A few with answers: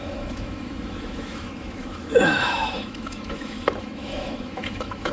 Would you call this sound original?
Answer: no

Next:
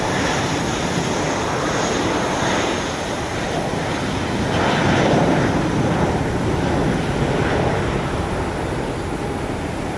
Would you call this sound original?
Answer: yes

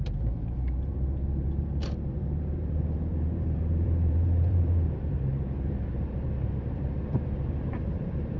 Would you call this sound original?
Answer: no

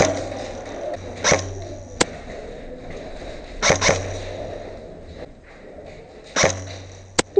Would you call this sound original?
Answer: yes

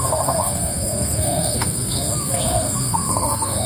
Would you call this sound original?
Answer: no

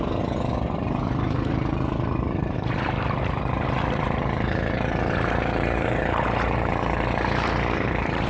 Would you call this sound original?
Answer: no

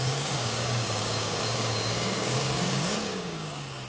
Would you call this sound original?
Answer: no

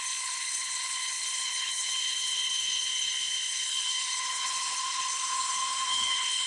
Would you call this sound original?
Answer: no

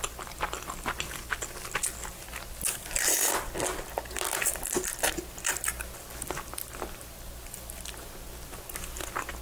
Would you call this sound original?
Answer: yes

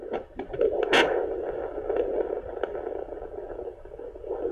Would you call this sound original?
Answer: yes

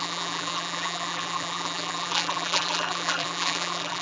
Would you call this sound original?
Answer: no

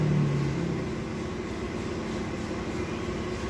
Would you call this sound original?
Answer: yes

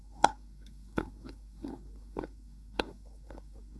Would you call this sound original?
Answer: no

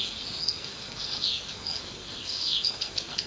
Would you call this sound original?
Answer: no